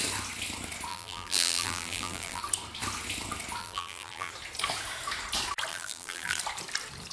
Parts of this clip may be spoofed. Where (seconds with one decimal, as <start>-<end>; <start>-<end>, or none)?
0.9-2.4; 3.6-4.3; 5.7-6.4